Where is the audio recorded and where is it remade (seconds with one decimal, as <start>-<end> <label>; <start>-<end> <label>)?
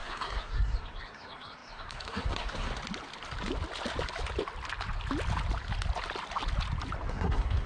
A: 0.0-2.7 remade; 2.7-7.1 recorded; 7.1-7.7 remade